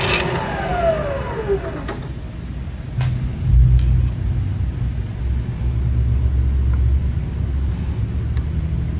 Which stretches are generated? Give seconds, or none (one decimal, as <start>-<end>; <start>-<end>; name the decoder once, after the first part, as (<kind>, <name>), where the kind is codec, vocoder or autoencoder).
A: none